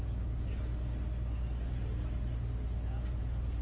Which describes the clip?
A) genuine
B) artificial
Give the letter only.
A